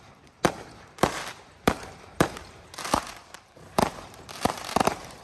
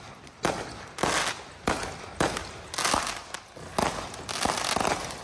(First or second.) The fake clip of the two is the first